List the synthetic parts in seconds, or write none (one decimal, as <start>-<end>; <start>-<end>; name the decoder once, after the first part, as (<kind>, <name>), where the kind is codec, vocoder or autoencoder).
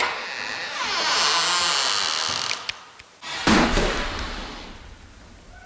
none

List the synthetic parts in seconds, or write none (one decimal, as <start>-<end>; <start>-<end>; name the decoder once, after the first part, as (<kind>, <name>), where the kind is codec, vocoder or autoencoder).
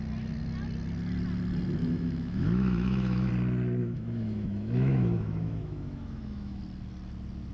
1.8-3.3 (autoencoder, DAC-VAE); 3.8-6.6